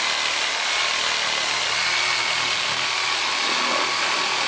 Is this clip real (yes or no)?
yes